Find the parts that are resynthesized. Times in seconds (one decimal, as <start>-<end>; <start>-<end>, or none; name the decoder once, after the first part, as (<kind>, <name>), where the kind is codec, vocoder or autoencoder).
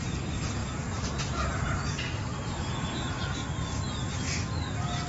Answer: 0.6-2.7 (vocoder, BigVGAN v2)